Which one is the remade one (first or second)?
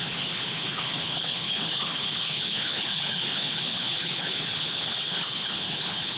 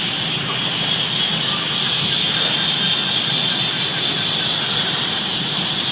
first